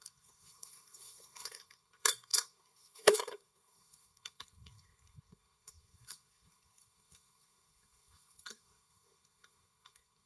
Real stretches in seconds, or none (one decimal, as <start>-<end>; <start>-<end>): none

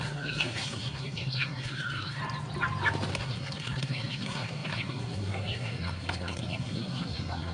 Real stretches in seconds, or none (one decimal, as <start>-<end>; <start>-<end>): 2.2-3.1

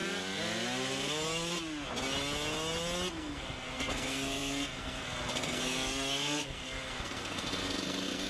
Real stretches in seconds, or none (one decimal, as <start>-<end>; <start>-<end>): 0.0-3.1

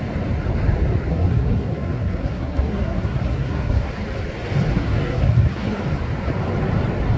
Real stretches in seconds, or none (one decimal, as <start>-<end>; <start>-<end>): 0.0-1.1; 3.9-4.7; 5.8-7.2

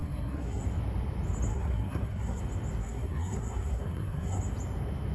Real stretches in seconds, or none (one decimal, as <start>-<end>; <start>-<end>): 0.6-1.5; 2.4-2.8; 4.4-5.1